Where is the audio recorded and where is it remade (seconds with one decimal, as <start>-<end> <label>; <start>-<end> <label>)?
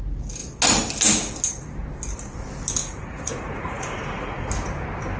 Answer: 0.0-2.8 recorded; 2.8-4.5 remade; 4.5-5.2 recorded